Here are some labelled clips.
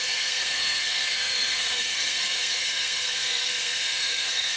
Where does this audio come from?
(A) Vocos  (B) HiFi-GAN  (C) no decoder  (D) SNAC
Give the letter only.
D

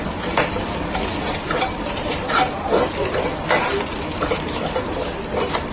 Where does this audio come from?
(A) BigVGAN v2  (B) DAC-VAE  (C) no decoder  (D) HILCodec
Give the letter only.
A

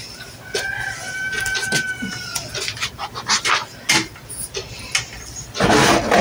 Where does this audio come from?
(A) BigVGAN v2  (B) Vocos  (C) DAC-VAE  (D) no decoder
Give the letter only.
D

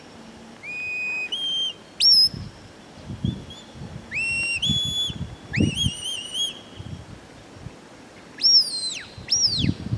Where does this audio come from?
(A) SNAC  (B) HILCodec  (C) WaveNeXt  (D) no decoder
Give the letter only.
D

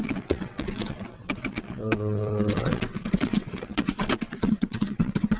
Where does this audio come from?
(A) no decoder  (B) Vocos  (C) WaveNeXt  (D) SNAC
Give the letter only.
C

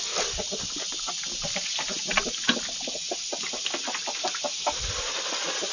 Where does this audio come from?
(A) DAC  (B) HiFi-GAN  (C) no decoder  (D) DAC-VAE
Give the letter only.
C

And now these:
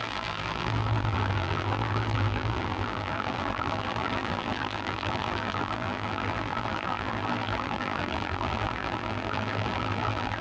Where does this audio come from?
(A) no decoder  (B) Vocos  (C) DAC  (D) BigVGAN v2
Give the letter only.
D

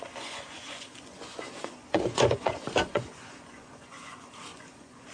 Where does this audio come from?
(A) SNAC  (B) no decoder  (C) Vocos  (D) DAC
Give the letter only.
C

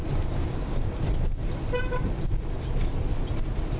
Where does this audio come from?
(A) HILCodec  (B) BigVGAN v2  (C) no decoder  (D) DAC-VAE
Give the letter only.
C